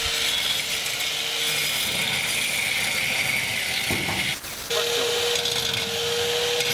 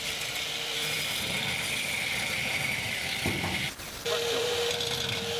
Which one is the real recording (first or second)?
first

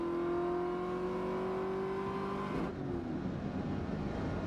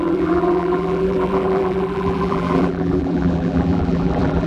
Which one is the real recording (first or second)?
first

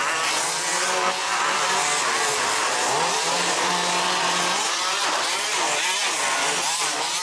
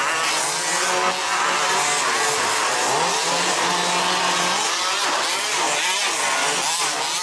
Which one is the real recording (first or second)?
second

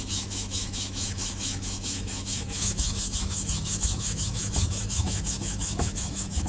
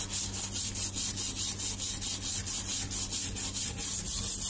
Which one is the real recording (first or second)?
second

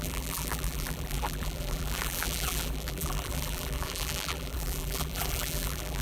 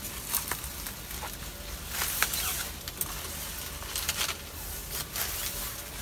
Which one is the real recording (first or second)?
second